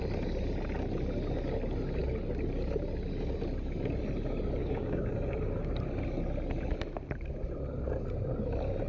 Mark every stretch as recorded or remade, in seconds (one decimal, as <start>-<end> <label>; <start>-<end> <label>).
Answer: 0.0-4.6 recorded; 4.6-5.1 remade; 5.1-8.9 recorded

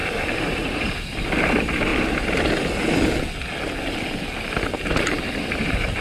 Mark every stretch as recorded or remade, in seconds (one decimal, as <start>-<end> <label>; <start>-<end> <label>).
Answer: 0.0-1.9 remade; 1.9-4.9 recorded; 4.9-6.0 remade

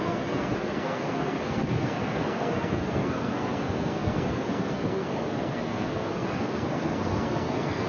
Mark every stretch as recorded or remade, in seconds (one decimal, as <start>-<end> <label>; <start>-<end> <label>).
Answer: 0.0-7.9 remade

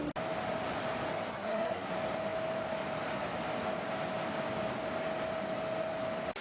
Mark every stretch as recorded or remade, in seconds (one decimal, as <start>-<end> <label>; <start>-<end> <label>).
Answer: 0.0-1.3 recorded; 1.3-1.9 remade; 1.9-6.4 recorded

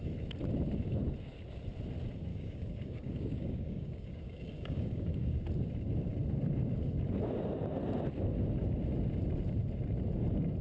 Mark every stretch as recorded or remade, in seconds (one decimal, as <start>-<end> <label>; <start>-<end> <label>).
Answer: 0.0-2.3 recorded; 2.3-5.4 remade; 5.4-10.6 recorded

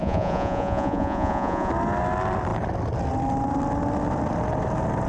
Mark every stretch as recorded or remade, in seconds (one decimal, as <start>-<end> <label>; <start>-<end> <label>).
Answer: 0.0-1.7 remade; 1.7-5.1 recorded

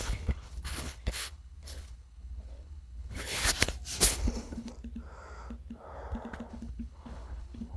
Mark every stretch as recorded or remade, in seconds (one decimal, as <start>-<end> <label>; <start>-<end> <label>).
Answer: 0.0-3.4 remade; 3.4-4.0 recorded; 4.0-4.7 remade; 4.7-6.5 recorded; 6.5-7.8 remade